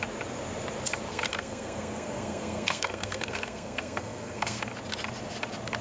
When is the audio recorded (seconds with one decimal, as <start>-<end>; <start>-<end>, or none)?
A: 0.0-1.1; 4.6-5.8